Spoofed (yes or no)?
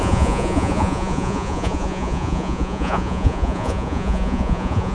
yes